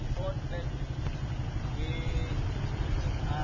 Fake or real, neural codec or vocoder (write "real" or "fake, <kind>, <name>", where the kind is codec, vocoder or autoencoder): real